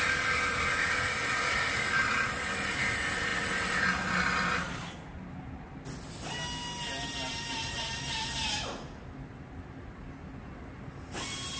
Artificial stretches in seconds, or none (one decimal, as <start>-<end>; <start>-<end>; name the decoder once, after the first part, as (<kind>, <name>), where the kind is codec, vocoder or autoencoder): none